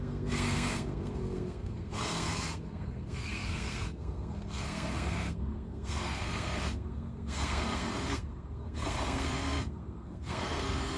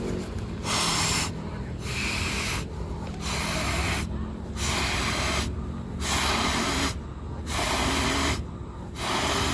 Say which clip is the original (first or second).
second